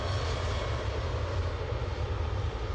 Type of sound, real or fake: real